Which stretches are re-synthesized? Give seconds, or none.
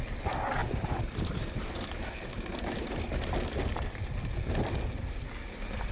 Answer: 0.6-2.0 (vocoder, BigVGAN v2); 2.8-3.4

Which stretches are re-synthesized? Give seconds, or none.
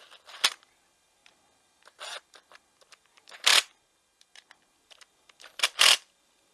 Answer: 0.0-1.2 (vocoder, BigVGAN v2); 2.9-3.5; 4.7-6.5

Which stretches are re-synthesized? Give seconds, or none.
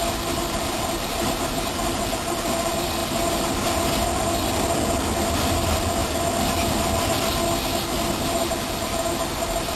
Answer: none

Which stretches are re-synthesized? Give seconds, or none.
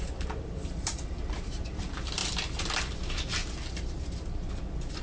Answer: 0.0-2.2 (vocoder, BigVGAN v2); 2.9-3.4